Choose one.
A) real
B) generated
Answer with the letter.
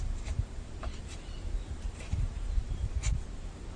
B